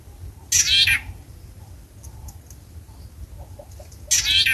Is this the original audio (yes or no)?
yes